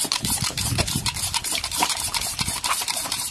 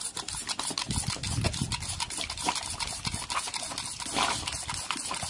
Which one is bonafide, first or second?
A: second